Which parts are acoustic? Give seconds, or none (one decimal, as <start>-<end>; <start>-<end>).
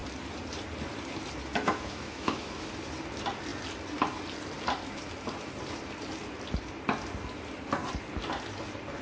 0.0-1.5; 2.7-9.0